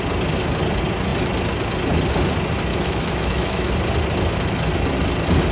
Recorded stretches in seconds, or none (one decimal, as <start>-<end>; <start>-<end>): 0.0-2.7; 3.7-5.5